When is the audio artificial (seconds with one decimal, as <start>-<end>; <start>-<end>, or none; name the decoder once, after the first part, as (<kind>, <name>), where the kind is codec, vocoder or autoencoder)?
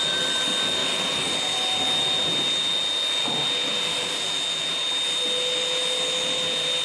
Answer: none